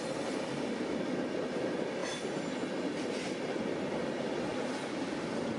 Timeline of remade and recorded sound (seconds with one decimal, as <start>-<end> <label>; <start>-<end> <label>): 0.0-5.6 recorded